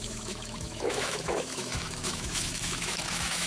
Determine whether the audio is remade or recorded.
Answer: remade